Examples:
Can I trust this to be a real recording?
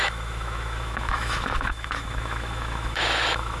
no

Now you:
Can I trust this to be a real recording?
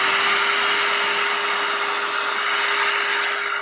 yes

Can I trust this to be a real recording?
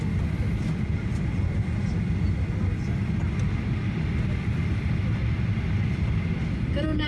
yes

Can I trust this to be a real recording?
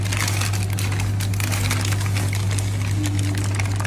yes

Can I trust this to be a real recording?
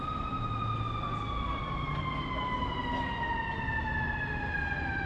yes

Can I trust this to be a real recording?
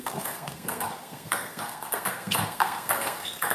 no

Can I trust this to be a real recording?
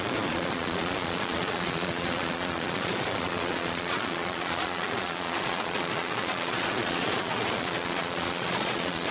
no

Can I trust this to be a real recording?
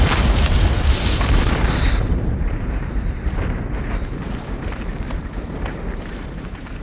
no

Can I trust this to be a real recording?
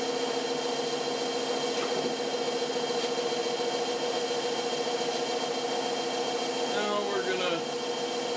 yes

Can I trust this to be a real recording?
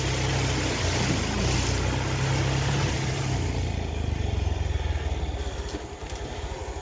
yes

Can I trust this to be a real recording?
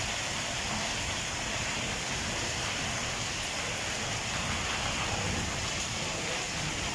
no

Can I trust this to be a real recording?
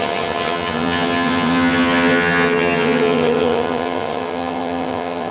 no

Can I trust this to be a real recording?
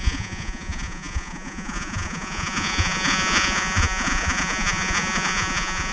no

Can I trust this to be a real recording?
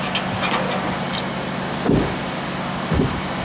yes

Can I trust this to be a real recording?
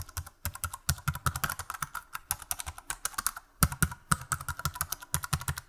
yes